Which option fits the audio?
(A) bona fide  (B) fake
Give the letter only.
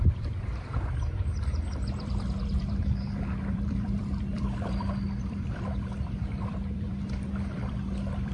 B